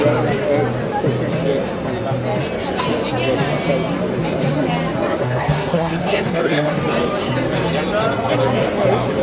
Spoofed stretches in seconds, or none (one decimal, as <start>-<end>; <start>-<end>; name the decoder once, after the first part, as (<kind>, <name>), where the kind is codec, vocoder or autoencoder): 5.2-6.8 (codec, SNAC)